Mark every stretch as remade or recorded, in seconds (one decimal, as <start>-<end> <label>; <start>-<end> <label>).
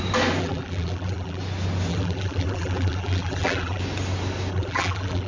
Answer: 0.0-0.4 recorded; 0.4-1.4 remade; 1.4-1.9 recorded; 1.9-3.8 remade; 3.8-4.5 recorded; 4.5-5.3 remade